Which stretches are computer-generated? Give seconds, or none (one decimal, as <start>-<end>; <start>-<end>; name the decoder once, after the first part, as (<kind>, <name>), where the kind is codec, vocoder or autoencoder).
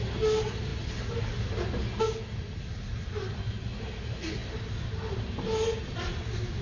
none